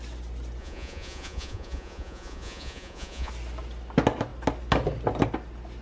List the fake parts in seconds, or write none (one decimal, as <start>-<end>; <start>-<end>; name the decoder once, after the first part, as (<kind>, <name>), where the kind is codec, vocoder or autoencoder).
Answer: 0.6-3.3 (vocoder, Vocos)